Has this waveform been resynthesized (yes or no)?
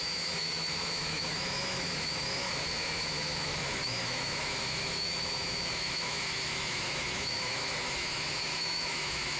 yes